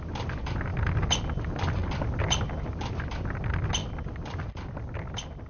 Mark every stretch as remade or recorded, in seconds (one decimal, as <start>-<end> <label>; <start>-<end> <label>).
0.0-5.5 recorded